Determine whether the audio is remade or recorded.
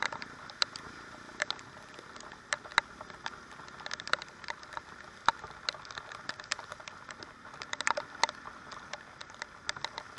recorded